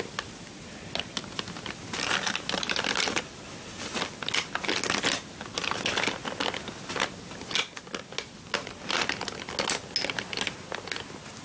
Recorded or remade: recorded